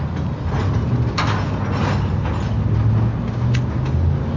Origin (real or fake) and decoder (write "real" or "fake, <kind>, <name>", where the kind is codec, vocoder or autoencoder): real